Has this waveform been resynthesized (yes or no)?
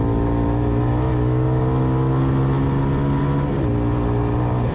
no